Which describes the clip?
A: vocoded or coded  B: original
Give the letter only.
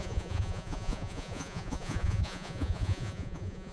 A